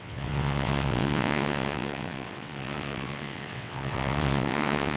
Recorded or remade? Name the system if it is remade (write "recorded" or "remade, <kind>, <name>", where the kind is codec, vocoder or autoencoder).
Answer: remade, vocoder, WaveNeXt